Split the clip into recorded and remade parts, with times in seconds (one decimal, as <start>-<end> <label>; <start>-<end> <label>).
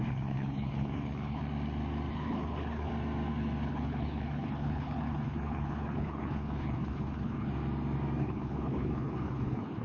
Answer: 0.0-1.4 remade; 1.4-2.1 recorded; 2.1-2.9 remade; 2.9-3.7 recorded; 3.7-7.5 remade; 7.5-8.2 recorded; 8.2-9.8 remade